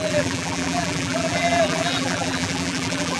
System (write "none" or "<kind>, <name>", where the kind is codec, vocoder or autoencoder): vocoder, BigVGAN v2